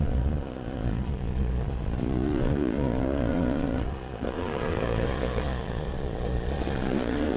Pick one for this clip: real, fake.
fake